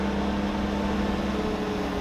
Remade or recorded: recorded